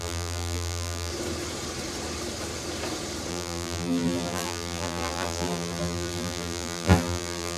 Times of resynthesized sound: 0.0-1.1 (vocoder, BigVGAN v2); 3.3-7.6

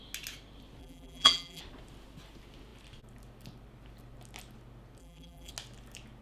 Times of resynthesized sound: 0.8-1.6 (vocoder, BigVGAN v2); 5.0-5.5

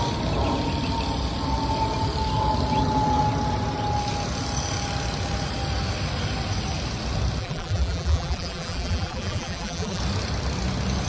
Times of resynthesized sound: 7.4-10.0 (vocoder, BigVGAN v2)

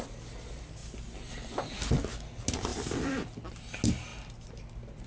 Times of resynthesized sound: 0.8-1.5 (vocoder, BigVGAN v2); 2.7-3.5

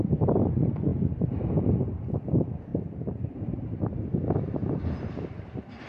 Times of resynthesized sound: 0.9-1.5 (vocoder, BigVGAN v2); 2.7-4.0; 4.6-5.9

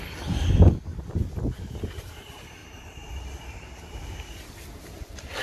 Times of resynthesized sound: 0.9-1.5 (vocoder, BigVGAN v2); 2.6-5.4

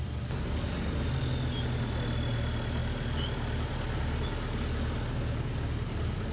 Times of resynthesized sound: 2.8-4.0 (vocoder, BigVGAN v2)